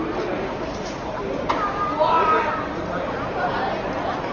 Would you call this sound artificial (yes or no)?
no